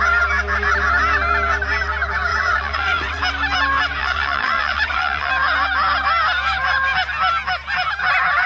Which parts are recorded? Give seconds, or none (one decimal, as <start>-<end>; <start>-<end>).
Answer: 0.0-2.3; 3.2-4.0; 5.3-8.5